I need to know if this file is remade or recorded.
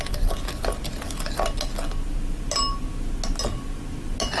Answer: recorded